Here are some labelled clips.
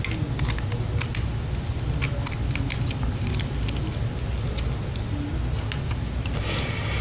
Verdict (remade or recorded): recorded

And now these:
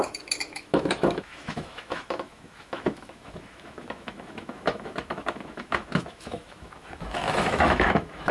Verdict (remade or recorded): remade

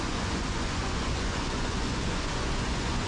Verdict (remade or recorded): remade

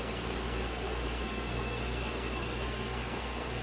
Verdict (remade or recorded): remade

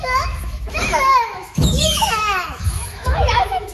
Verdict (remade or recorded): remade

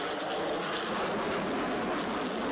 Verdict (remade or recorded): recorded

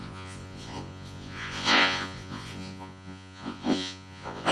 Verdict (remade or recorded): remade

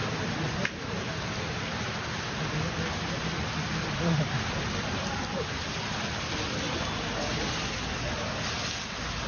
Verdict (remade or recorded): recorded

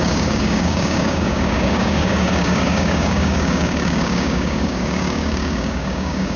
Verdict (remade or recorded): remade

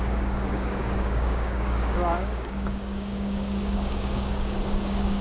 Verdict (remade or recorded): remade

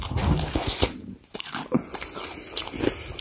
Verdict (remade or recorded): recorded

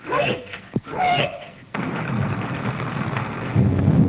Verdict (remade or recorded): remade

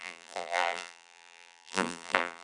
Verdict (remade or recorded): remade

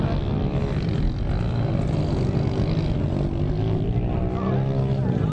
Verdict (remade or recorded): recorded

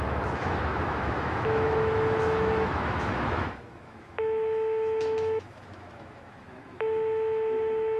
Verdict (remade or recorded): remade